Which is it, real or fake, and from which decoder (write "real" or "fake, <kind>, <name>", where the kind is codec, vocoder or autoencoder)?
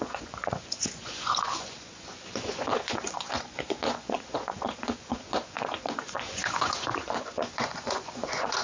fake, vocoder, Vocos